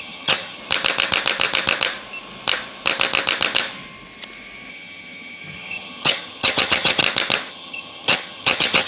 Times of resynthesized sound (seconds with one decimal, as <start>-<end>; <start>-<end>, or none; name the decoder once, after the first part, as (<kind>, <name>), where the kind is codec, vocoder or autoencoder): 0.0-0.6 (vocoder, HiFi-GAN); 4.7-7.0; 7.5-8.9